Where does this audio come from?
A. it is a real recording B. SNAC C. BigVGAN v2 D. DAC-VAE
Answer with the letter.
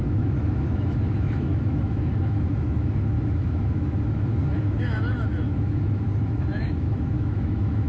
D